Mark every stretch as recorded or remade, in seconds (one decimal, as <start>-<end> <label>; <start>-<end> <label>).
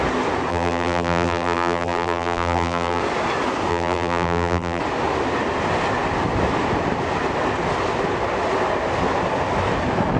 0.0-0.5 recorded; 0.5-3.0 remade; 3.0-3.7 recorded; 3.7-4.8 remade; 4.8-10.2 recorded